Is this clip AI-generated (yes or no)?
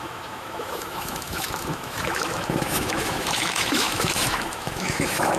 yes